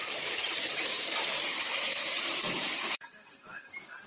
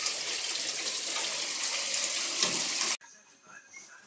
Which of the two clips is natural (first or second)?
second